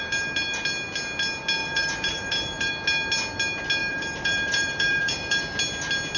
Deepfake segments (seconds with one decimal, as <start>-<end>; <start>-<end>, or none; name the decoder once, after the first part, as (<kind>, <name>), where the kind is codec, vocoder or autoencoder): 1.6-2.7 (vocoder, BigVGAN v2); 3.8-5.4